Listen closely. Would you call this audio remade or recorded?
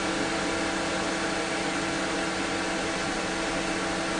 recorded